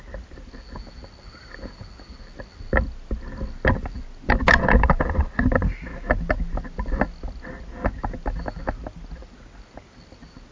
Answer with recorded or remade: recorded